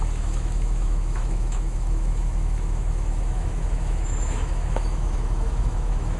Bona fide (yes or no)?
no